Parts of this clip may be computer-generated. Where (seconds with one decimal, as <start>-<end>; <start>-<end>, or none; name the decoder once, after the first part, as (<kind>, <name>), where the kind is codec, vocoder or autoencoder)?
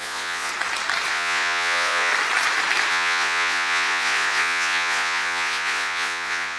0.0-0.5 (vocoder, Vocos); 1.1-2.1; 2.9-6.6